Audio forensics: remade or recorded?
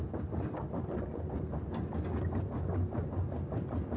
recorded